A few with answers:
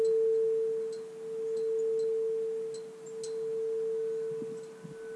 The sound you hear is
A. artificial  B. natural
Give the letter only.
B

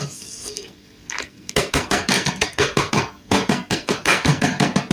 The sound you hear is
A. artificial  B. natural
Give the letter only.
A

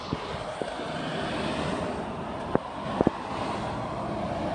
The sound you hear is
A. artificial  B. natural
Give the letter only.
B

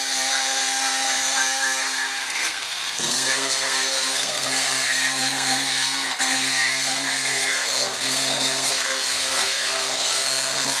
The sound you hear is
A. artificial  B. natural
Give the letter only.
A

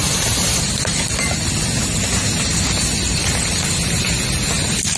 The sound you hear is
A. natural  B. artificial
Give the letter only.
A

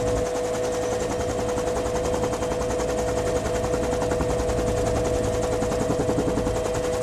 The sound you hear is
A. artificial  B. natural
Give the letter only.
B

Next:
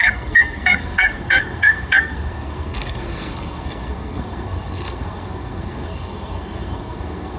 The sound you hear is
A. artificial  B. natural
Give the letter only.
A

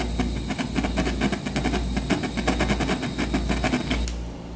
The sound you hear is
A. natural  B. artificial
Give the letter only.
A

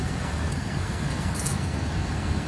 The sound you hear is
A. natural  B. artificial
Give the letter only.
B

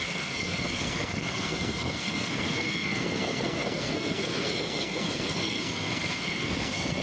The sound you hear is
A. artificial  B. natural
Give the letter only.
A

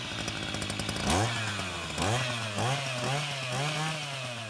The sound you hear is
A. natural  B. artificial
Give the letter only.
A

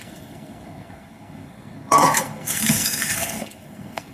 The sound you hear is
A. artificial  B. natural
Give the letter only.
A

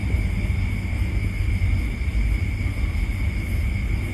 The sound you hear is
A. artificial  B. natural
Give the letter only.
B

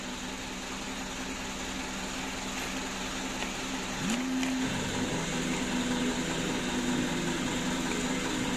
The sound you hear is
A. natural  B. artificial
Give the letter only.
A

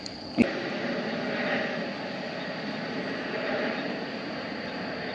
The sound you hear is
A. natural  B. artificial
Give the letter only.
A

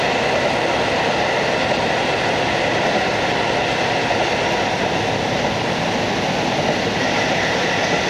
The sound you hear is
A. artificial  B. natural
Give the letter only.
B